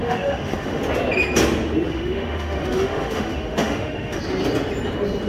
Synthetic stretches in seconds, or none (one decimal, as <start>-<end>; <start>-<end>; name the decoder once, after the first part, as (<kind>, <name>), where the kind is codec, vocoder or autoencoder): 0.0-0.8 (autoencoder, DAC-VAE); 1.9-4.2